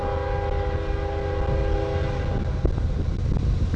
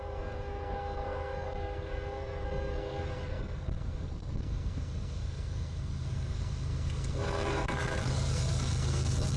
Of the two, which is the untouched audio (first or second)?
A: first